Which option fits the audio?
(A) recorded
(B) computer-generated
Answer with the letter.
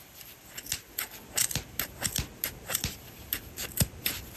A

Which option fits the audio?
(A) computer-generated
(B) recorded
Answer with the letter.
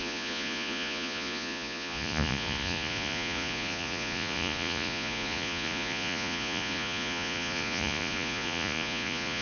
A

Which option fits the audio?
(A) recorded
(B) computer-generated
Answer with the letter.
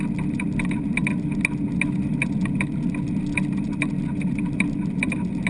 A